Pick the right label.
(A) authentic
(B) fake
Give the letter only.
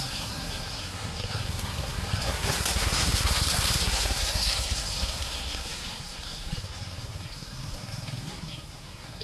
B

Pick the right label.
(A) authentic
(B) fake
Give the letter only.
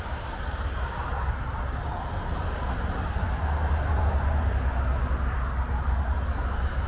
A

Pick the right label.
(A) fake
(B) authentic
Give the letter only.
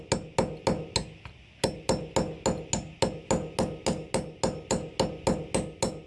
B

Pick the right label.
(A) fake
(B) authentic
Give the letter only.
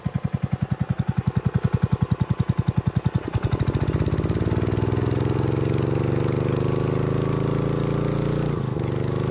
B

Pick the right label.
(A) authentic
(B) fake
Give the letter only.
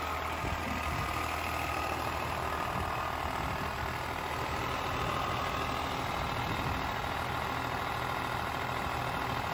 A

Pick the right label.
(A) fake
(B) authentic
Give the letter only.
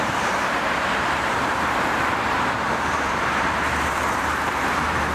A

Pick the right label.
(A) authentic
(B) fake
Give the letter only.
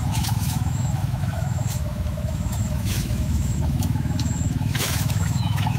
B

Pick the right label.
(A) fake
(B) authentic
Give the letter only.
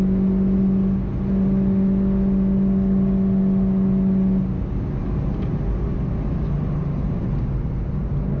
B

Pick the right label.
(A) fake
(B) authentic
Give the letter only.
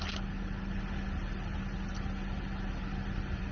B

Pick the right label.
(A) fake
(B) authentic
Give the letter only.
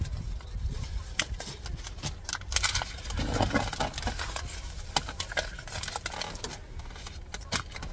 B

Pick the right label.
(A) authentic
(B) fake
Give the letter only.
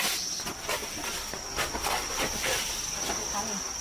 A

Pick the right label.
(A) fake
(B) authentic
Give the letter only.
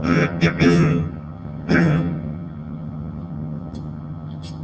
A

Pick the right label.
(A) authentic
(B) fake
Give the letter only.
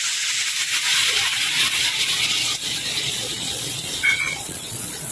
B